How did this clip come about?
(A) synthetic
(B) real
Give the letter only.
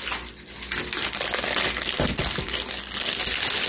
B